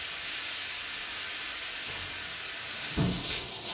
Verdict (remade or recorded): recorded